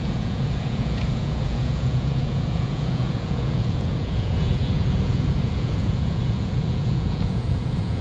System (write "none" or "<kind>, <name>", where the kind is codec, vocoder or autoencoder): vocoder, Vocos